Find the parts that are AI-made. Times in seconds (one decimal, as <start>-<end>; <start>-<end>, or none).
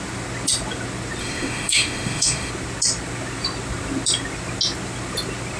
1.2-2.5